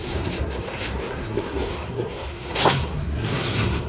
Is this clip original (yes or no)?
no